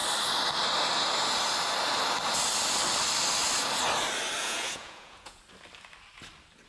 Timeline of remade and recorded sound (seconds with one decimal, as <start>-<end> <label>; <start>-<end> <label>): 0.0-4.4 recorded; 4.4-5.4 remade; 5.4-6.7 recorded